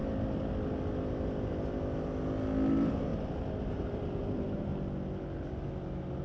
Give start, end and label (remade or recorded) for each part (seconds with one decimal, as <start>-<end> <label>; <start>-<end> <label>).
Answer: 0.0-2.7 recorded; 2.7-3.1 remade; 3.1-3.7 recorded; 3.7-4.7 remade; 4.7-6.2 recorded